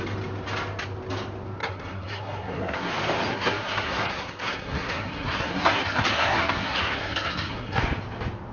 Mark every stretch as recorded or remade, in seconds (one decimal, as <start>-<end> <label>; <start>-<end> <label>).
0.0-1.6 recorded; 1.6-2.9 remade; 2.9-3.3 recorded; 3.3-7.8 remade; 7.8-8.5 recorded